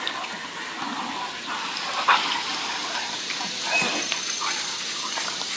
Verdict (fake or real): real